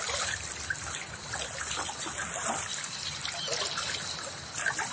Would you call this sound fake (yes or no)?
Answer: no